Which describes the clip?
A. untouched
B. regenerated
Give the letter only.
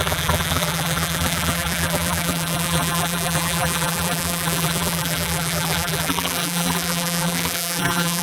B